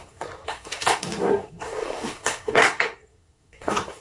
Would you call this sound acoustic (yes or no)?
no